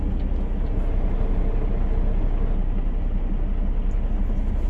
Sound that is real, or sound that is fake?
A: real